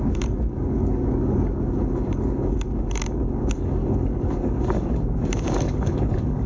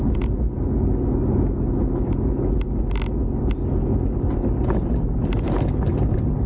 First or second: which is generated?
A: first